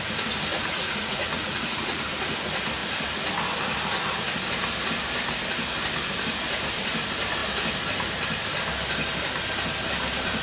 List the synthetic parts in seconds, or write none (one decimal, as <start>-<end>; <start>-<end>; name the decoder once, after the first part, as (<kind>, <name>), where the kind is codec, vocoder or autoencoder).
0.5-2.0 (vocoder, Vocos)